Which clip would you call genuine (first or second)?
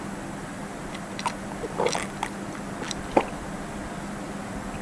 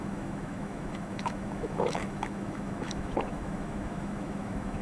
first